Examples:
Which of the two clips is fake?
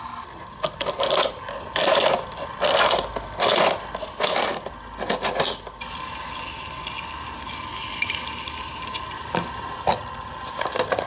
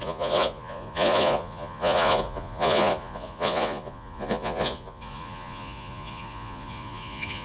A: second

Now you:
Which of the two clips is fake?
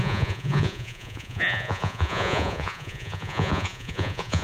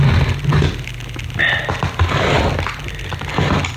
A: first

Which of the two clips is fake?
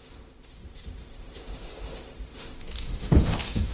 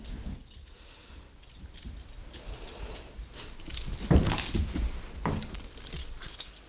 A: first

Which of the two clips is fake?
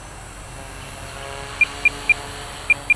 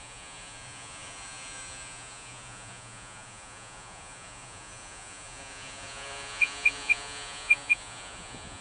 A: second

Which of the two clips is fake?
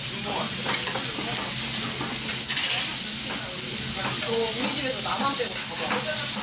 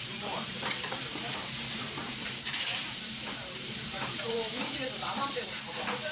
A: second